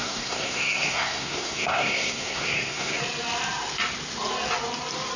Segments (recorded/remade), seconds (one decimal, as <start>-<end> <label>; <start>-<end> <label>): 0.0-3.0 remade; 3.0-5.2 recorded